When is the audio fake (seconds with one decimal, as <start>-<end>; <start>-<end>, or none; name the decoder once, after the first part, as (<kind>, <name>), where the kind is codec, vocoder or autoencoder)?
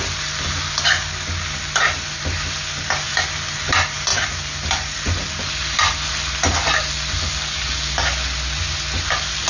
none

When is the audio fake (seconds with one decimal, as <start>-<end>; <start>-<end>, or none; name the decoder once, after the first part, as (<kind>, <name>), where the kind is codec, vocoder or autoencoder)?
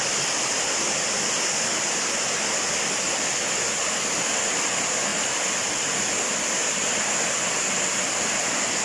none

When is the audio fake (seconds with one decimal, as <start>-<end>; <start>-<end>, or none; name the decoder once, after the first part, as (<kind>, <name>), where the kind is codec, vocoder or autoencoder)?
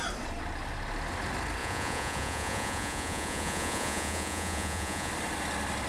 1.6-5.1 (vocoder, Vocos)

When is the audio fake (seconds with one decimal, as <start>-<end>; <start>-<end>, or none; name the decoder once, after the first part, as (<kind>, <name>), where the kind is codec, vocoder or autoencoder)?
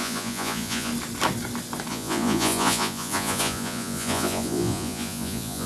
0.0-0.9 (vocoder, Vocos); 1.9-5.7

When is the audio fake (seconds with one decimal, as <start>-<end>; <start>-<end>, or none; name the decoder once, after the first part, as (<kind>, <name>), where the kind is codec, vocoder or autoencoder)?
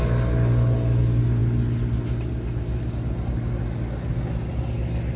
none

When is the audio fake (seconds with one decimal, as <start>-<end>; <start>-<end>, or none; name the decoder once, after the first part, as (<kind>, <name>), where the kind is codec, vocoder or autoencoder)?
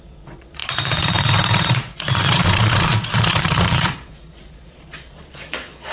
0.0-5.9 (vocoder, Vocos)